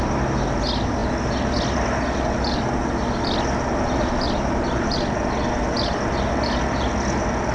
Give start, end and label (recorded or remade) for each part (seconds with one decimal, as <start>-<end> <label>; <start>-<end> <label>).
0.0-7.5 recorded